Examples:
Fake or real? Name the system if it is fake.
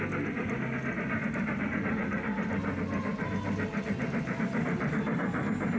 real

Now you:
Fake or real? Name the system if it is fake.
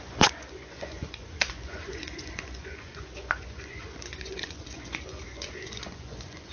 fake, vocoder, Vocos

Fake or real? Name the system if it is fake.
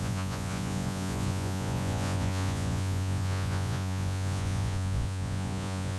fake, vocoder, Vocos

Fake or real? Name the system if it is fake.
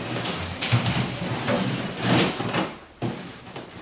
fake, vocoder, BigVGAN v2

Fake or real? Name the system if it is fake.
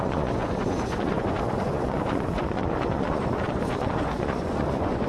fake, vocoder, Vocos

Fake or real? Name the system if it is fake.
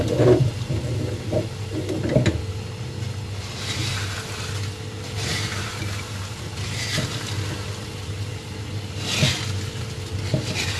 real